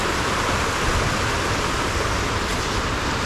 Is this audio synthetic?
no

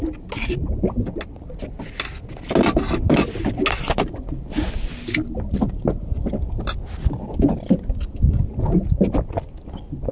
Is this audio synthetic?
no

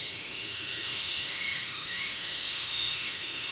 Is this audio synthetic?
yes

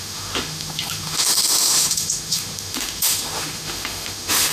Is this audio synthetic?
yes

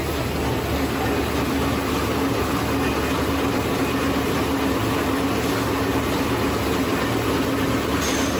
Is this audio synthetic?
no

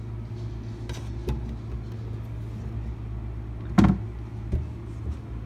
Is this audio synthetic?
no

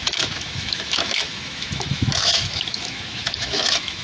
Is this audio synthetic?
yes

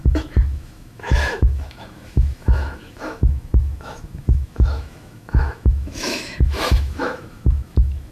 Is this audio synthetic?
yes